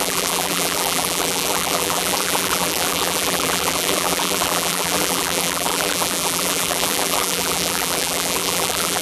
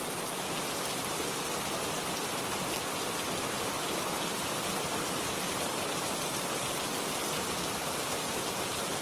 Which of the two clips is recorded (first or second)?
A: second